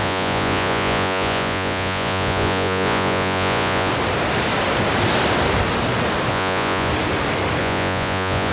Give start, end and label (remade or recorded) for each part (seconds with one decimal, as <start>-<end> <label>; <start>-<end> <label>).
0.0-3.9 remade; 3.9-6.3 recorded; 6.3-6.9 remade; 6.9-7.6 recorded; 7.6-8.5 remade